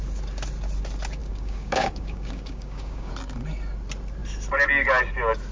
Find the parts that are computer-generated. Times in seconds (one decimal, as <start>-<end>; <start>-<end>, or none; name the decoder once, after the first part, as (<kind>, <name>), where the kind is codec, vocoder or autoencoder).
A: 1.2-3.1 (codec, DAC)